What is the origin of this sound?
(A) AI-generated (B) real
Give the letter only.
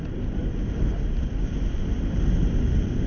B